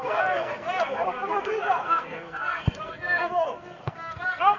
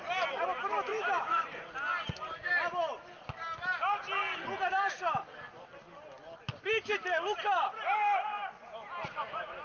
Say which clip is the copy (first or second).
first